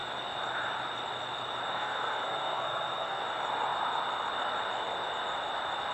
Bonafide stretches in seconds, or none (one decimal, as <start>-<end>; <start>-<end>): 0.0-1.7; 3.2-5.9